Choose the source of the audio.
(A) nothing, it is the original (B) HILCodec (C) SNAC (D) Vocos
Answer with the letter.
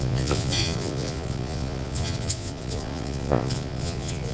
D